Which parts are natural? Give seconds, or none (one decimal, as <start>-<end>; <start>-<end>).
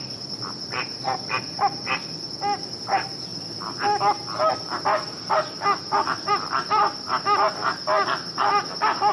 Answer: 0.0-9.1